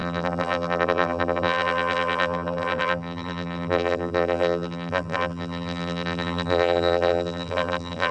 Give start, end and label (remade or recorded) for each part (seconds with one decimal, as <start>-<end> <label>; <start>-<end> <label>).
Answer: 0.0-8.1 remade